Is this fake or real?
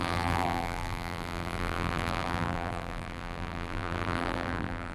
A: fake